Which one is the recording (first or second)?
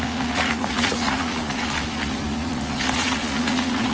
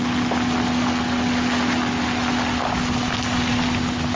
second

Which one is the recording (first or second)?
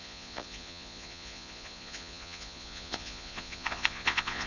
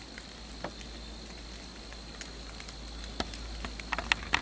second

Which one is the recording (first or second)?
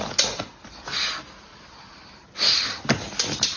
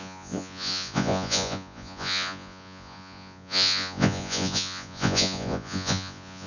first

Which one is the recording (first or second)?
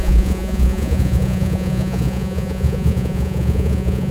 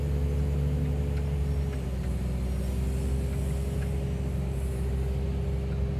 second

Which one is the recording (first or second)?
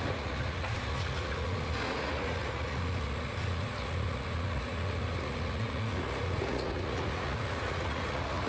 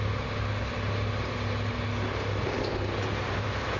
second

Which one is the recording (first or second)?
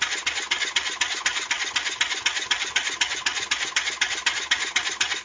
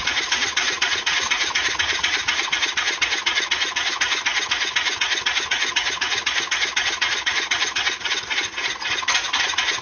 first